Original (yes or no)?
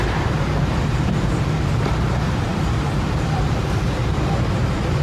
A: no